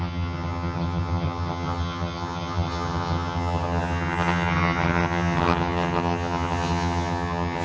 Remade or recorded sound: remade